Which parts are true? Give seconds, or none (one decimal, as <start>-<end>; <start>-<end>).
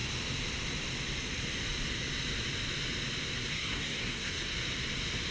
0.0-3.3; 4.5-5.3